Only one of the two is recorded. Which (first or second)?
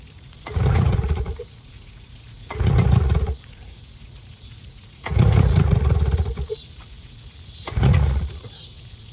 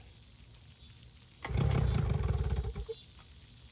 second